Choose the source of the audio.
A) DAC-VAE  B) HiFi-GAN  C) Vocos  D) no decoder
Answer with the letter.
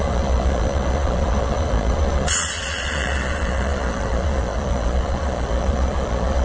C